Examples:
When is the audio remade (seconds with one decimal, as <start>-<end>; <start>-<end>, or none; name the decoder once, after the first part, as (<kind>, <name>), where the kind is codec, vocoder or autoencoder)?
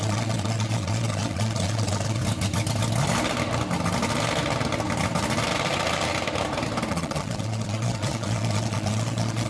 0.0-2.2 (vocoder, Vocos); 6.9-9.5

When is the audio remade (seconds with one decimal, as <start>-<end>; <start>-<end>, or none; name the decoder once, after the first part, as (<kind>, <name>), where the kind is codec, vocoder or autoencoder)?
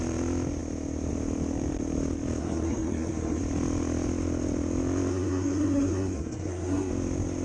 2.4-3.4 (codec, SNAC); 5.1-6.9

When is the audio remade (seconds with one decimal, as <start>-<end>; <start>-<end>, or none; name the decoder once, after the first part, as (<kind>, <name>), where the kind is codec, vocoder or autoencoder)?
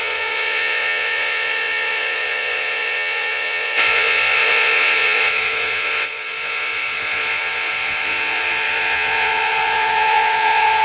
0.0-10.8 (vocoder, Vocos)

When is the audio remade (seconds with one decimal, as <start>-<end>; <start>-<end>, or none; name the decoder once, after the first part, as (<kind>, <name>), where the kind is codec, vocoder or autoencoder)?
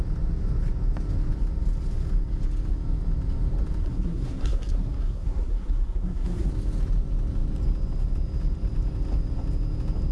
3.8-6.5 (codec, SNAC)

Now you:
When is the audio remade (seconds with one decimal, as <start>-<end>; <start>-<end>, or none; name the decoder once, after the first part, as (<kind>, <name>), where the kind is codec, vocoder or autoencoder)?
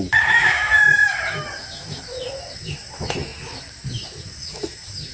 0.0-5.1 (autoencoder, DAC-VAE)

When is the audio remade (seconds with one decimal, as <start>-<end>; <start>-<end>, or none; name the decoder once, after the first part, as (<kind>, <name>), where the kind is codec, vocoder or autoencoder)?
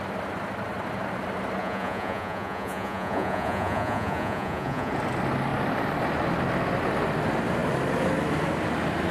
1.6-4.9 (vocoder, Vocos)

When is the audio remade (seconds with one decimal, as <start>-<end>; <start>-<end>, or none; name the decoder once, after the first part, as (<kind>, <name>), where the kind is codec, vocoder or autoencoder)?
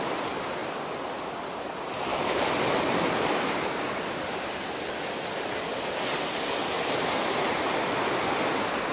2.1-2.8 (vocoder, BigVGAN v2); 3.3-4.8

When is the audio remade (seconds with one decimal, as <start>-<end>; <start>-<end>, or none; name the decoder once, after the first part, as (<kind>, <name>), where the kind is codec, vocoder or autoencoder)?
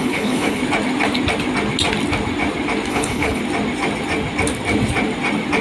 0.0-0.6 (codec, HILCodec); 2.9-3.4